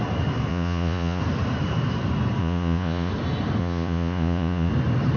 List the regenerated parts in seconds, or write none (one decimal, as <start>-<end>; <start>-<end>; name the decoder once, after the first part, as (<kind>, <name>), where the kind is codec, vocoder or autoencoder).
0.5-1.2 (vocoder, Vocos); 2.4-3.1; 3.6-4.7

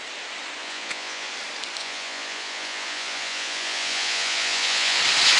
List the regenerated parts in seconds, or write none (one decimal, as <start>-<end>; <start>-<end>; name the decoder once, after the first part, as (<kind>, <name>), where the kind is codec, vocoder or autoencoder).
0.6-1.3 (vocoder, Vocos); 1.8-5.0

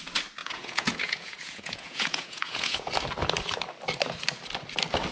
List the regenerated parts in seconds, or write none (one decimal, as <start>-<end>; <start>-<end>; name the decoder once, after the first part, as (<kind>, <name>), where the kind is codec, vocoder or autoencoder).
0.4-2.9 (vocoder, Vocos)

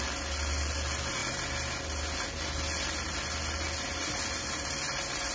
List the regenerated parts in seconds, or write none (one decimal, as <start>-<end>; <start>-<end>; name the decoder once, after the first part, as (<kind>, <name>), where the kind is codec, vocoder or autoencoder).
none